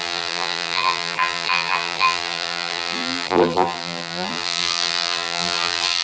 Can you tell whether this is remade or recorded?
remade